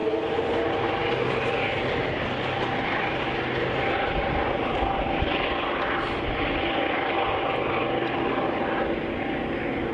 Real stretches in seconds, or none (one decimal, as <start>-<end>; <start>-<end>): 0.0-9.9